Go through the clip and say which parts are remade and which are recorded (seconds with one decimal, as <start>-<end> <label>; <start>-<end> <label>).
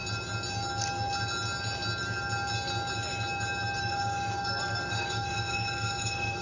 0.0-3.8 recorded; 3.8-6.4 remade